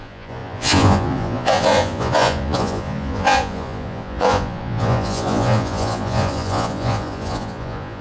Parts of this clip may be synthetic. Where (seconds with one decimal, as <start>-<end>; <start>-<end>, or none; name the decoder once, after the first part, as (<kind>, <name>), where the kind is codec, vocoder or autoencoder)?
0.0-8.0 (vocoder, Vocos)